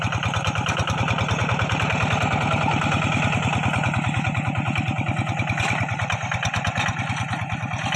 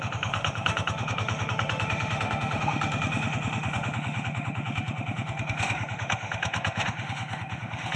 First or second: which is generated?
second